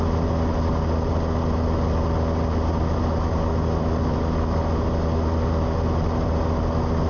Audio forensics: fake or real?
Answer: real